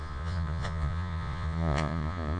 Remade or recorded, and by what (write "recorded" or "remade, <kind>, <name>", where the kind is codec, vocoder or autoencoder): remade, vocoder, Vocos